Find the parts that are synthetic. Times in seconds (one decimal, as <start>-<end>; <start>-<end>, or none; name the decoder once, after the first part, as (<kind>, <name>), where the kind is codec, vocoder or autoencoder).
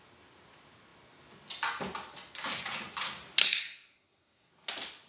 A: 3.4-4.5 (codec, SNAC)